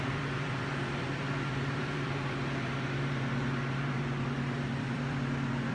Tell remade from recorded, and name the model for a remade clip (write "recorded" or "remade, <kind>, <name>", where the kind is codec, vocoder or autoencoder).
remade, vocoder, BigVGAN v2